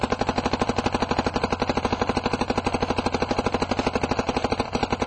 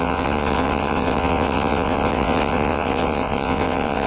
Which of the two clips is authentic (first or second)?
first